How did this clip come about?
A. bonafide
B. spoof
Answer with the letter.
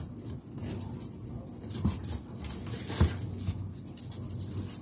A